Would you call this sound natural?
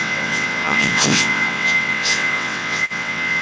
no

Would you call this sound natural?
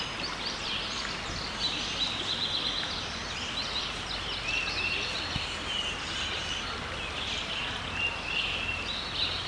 yes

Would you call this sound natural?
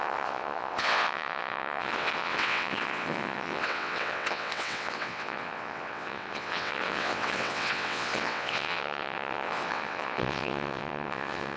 no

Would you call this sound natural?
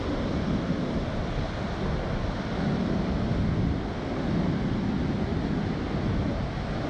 yes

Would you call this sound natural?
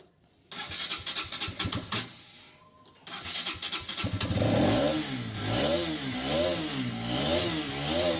yes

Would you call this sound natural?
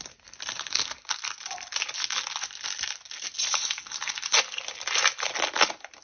yes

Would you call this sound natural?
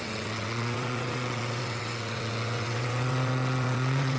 no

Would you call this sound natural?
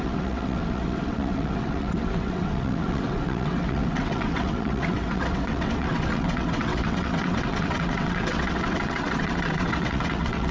no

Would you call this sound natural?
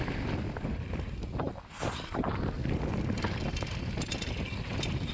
yes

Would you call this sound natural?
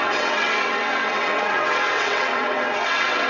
no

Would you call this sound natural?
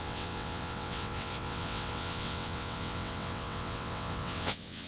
no